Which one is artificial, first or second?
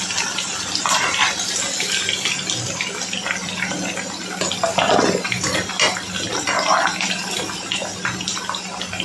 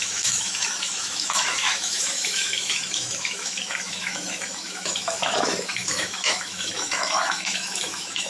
second